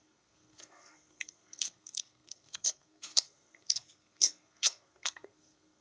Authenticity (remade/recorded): remade